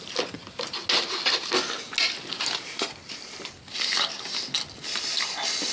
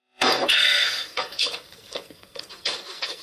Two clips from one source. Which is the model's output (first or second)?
second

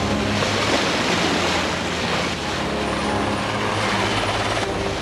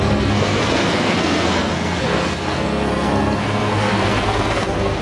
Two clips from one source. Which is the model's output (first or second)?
second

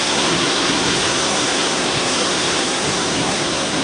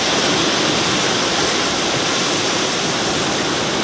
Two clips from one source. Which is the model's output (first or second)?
first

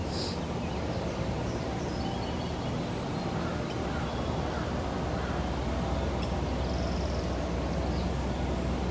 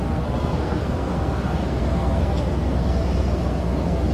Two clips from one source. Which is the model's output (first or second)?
second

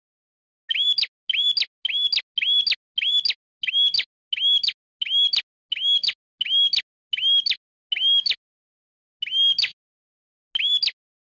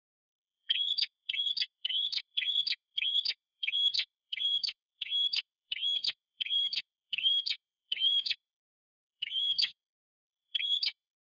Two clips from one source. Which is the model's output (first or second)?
second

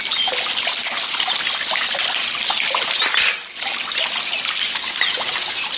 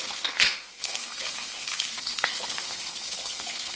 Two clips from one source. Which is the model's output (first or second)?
second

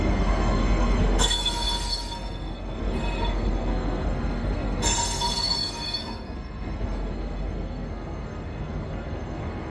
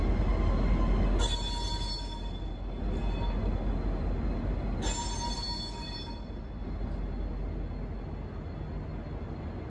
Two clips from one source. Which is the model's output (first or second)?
first